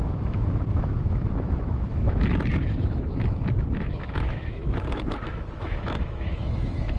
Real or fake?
fake